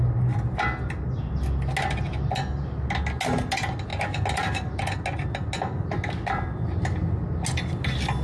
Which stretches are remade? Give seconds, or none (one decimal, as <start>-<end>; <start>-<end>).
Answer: none